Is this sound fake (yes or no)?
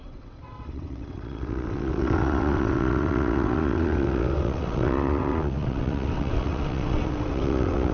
yes